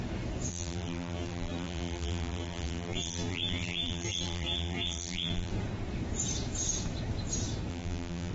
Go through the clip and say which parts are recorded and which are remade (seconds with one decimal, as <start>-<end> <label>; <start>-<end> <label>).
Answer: 0.0-0.5 recorded; 0.5-5.5 remade; 5.5-7.7 recorded; 7.7-8.3 remade